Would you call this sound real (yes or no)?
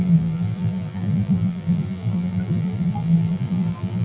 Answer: no